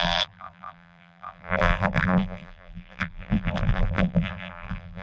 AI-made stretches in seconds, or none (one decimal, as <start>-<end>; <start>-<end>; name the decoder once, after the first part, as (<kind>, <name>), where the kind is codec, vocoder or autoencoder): 0.0-5.0 (vocoder, BigVGAN v2)